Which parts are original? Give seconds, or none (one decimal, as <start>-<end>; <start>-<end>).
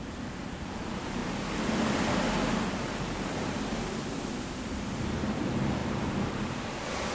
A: 1.2-5.3